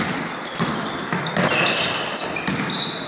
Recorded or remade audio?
recorded